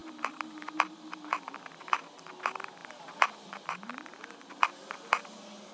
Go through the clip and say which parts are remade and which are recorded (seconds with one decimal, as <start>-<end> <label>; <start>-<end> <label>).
0.0-5.7 recorded